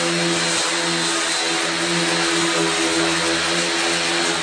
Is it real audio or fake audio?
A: real